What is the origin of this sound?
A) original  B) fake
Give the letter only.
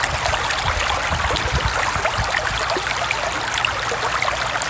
A